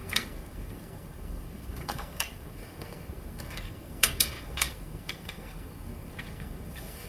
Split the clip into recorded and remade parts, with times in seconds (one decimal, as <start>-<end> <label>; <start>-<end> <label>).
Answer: 0.0-7.1 remade

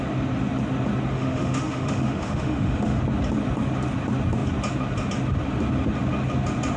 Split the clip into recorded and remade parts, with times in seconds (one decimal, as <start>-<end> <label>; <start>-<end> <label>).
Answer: 0.0-1.1 recorded; 1.1-3.0 remade; 3.0-6.8 recorded

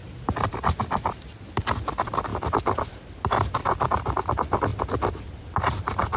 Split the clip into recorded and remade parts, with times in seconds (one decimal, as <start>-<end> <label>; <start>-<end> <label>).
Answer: 0.0-1.0 remade; 1.0-2.3 recorded; 2.3-4.2 remade; 4.2-4.7 recorded; 4.7-6.2 remade